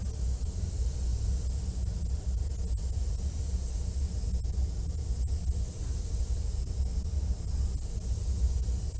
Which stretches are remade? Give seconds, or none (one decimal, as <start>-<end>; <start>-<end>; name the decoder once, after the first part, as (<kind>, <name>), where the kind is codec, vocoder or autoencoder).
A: none